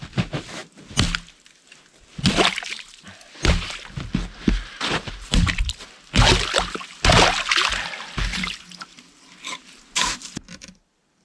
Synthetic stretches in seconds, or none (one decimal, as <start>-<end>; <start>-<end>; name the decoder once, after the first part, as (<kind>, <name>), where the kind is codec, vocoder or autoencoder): none